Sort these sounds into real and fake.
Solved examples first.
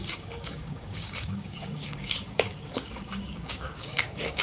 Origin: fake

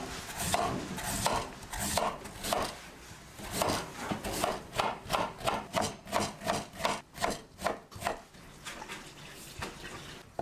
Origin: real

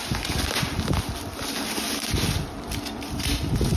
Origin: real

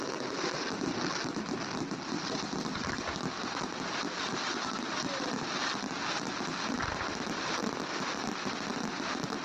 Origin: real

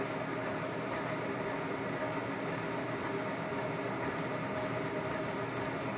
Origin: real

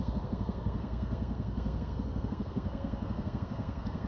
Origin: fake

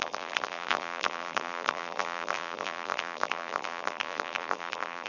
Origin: fake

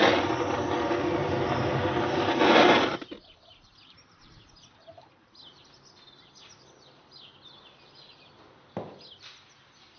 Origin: real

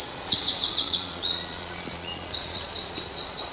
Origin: fake